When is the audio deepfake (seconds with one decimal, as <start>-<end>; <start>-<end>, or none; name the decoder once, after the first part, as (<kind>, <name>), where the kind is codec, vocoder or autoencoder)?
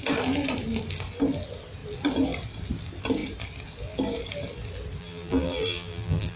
5.0-6.4 (vocoder, BigVGAN v2)